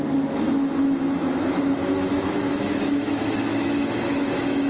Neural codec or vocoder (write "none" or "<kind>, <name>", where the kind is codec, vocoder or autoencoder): autoencoder, DAC-VAE